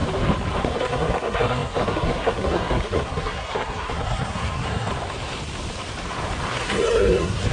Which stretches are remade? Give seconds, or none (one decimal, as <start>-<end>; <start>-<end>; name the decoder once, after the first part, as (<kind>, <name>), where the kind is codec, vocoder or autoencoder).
0.6-4.9 (codec, SNAC); 6.5-7.5